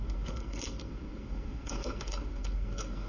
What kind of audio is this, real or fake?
fake